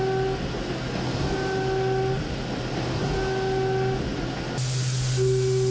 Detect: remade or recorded recorded